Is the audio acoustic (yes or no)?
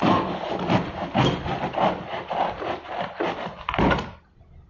yes